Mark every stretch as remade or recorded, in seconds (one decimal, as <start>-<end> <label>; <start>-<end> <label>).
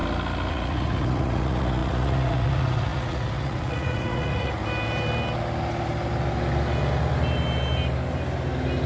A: 0.0-0.5 recorded; 0.5-4.6 remade; 4.6-8.9 recorded